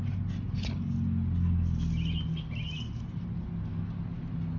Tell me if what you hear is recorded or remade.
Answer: recorded